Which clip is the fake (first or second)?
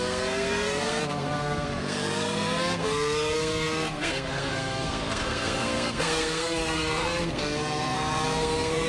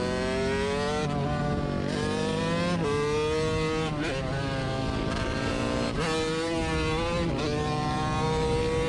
first